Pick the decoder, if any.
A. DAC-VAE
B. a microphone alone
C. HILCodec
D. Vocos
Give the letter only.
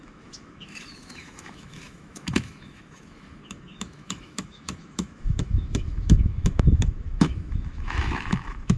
A